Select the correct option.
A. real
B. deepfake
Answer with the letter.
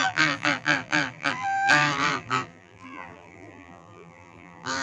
B